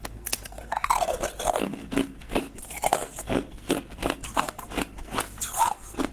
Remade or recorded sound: remade